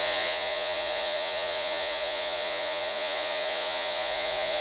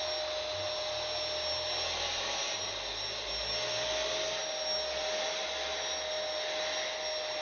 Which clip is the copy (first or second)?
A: first